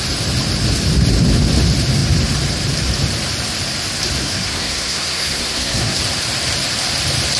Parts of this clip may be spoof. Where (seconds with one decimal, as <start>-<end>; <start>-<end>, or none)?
4.2-6.0